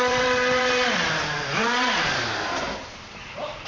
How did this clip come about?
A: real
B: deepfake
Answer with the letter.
B